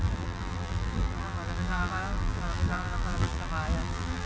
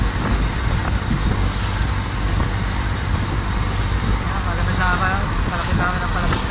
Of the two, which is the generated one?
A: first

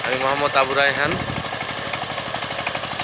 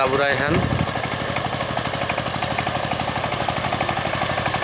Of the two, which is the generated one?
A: second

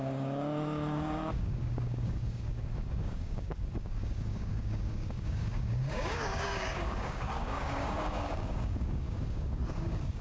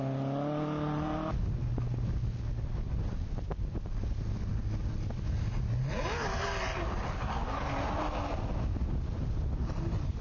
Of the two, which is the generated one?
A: first